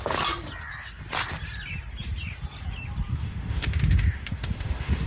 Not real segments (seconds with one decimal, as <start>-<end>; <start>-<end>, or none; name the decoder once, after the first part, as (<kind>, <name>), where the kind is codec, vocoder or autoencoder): 3.1-5.1 (autoencoder, DAC-VAE)